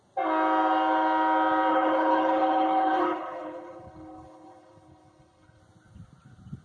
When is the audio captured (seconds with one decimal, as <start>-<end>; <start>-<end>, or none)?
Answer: 0.0-1.7; 5.6-6.6

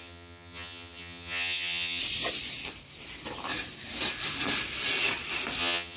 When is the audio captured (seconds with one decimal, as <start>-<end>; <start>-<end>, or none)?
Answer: 2.0-5.6